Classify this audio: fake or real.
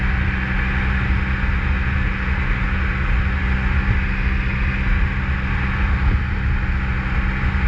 real